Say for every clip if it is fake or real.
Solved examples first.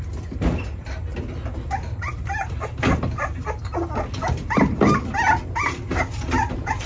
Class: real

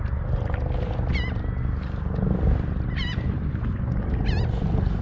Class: real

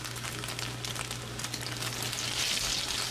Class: real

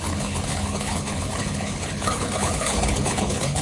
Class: fake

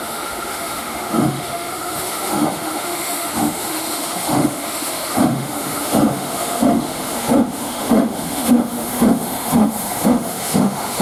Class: fake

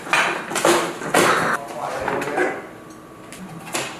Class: real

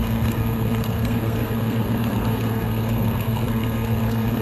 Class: fake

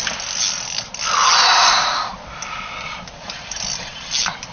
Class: real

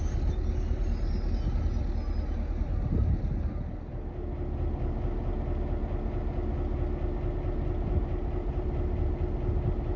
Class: real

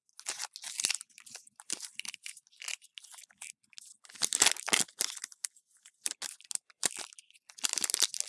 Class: real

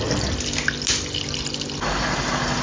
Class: real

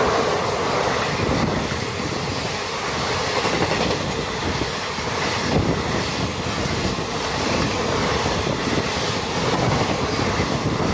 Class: real